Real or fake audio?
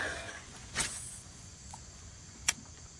fake